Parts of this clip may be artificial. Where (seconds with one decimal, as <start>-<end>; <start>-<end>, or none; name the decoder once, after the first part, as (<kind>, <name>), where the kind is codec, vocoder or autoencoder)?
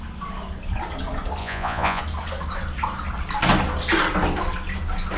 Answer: 1.4-2.0 (vocoder, Vocos)